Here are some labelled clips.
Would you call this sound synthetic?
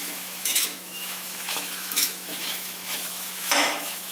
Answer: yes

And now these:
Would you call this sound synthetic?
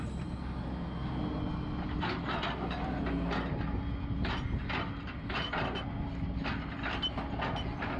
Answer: no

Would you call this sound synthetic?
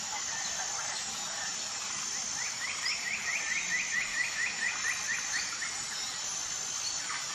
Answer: no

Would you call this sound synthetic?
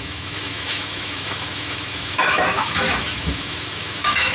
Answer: yes